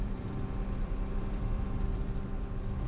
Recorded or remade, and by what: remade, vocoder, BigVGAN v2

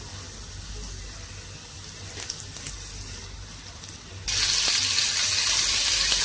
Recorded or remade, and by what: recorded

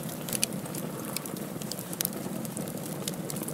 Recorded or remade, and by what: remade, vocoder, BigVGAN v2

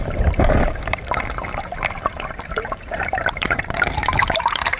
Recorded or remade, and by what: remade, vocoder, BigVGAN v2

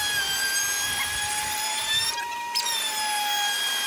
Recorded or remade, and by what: remade, vocoder, BigVGAN v2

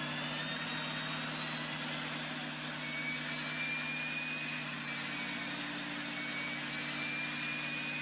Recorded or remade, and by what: recorded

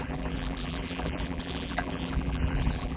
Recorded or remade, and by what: remade, vocoder, BigVGAN v2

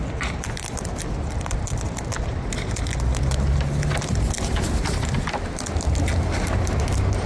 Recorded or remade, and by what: recorded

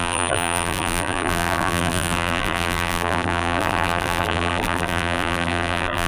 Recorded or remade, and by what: remade, vocoder, BigVGAN v2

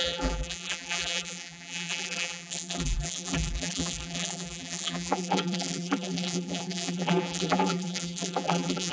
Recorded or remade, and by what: remade, vocoder, BigVGAN v2